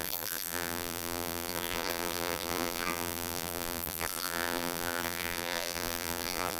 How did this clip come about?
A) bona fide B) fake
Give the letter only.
B